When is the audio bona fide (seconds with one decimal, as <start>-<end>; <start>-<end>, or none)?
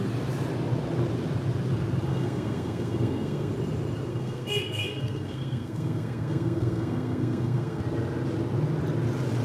0.0-2.1; 3.5-4.1; 7.8-9.4